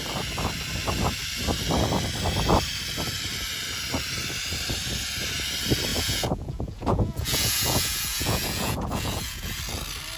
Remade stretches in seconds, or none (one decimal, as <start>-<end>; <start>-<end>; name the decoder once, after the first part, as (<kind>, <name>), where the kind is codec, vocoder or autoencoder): 5.9-9.6 (vocoder, Vocos)